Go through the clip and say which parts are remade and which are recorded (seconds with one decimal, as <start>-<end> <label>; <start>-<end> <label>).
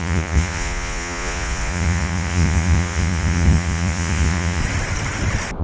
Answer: 0.0-4.6 remade; 4.6-5.6 recorded